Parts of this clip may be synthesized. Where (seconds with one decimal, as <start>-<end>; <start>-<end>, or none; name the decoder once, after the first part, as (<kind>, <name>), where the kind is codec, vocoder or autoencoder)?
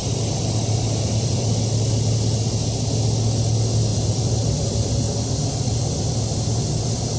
0.0-1.4 (vocoder, BigVGAN v2); 3.9-6.2